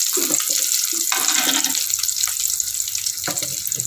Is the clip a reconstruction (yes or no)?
no